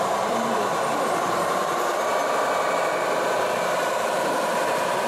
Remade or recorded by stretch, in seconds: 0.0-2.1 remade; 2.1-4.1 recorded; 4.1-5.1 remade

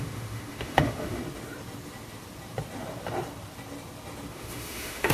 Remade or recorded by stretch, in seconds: 0.0-1.2 remade; 1.2-4.3 recorded; 4.3-5.1 remade

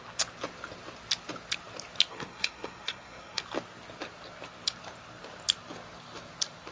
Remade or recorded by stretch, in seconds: 0.0-2.1 recorded; 2.1-3.4 remade; 3.4-6.7 recorded

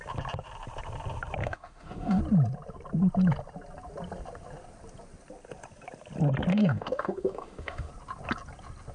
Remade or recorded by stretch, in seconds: 0.0-1.4 recorded; 1.4-2.2 remade; 2.2-6.5 recorded; 6.5-7.9 remade; 7.9-8.9 recorded

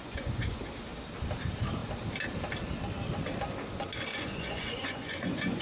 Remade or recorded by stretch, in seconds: 0.0-0.6 remade; 0.6-4.1 recorded; 4.1-5.6 remade

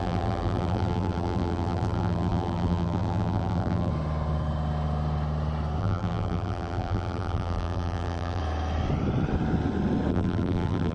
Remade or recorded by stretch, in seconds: 0.0-3.9 remade; 3.9-5.8 recorded; 5.8-8.4 remade; 8.4-10.1 recorded; 10.1-10.9 remade

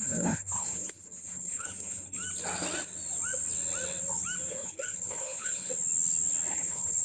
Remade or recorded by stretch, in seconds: 0.0-2.2 remade; 2.2-4.5 recorded; 4.5-5.7 remade; 5.7-6.5 recorded; 6.5-7.0 remade

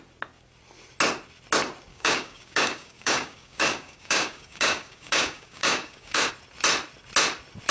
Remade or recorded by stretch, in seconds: 0.0-1.9 recorded; 1.9-6.3 remade; 6.3-7.7 recorded